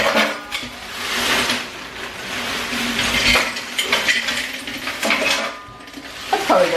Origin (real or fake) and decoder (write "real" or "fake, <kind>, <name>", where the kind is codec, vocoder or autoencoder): real